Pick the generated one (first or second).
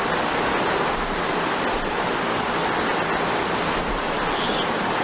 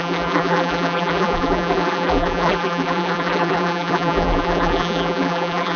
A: second